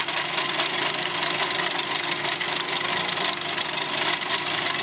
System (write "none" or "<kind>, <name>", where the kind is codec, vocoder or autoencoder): none